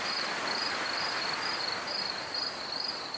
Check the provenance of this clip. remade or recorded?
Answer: recorded